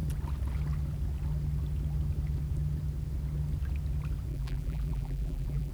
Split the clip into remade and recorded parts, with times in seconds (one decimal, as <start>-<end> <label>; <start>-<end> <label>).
0.0-4.3 recorded; 4.3-5.7 remade